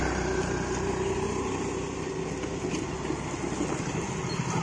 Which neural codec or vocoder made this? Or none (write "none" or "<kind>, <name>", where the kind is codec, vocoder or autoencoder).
none